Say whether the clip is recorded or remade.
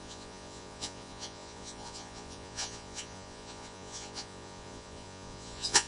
remade